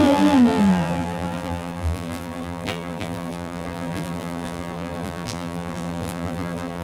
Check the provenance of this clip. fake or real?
fake